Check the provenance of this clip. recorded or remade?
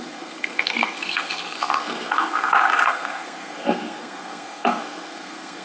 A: remade